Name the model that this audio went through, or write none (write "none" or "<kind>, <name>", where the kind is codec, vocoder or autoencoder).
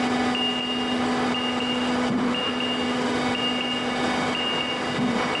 none